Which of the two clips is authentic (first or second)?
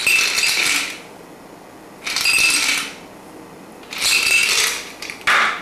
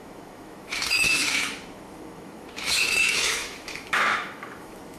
first